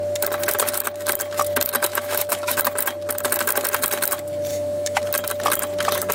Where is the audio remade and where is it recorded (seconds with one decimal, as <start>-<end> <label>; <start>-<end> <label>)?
0.0-1.9 recorded; 1.9-2.6 remade; 2.6-4.5 recorded; 4.5-5.0 remade; 5.0-6.1 recorded